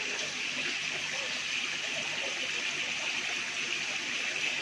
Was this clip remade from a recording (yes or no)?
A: no